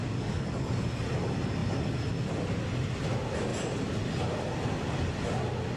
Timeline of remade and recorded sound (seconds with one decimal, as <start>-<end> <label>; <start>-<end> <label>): 0.0-0.7 remade; 0.7-5.8 recorded

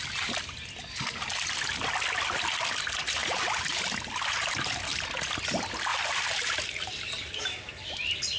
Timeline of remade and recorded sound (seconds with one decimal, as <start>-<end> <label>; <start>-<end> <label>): 0.0-3.2 recorded; 3.2-3.8 remade; 3.8-5.9 recorded; 5.9-6.9 remade; 6.9-8.4 recorded

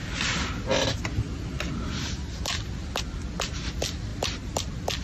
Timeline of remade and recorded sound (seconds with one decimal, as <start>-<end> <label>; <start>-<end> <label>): 0.0-5.0 recorded